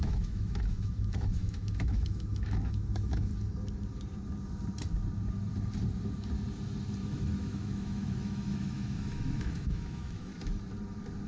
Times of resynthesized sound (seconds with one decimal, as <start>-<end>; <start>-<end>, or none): 0.0-3.3; 7.0-10.3